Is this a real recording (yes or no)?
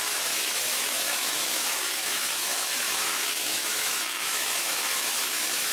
no